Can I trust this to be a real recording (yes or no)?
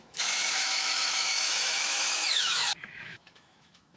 no